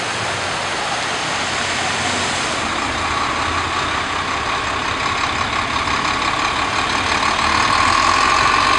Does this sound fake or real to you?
real